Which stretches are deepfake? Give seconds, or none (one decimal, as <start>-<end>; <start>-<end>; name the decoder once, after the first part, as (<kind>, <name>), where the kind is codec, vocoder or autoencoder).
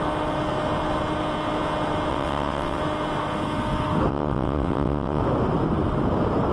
2.1-2.8 (vocoder, WaveNeXt); 4.1-5.2